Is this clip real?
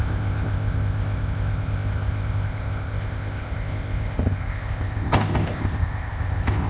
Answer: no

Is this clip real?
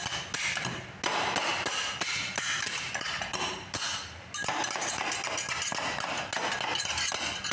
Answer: yes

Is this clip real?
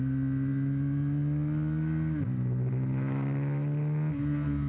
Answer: yes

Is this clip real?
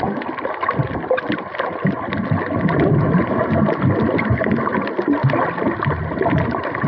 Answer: yes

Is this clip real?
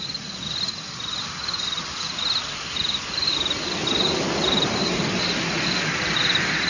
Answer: yes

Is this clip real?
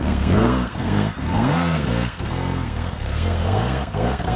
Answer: no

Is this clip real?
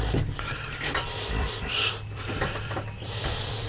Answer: no